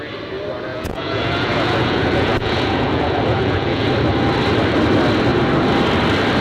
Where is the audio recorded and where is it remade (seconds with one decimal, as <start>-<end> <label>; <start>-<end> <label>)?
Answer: 0.0-0.7 recorded; 0.7-3.9 remade; 3.9-6.4 recorded